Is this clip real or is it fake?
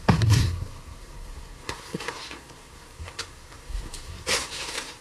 fake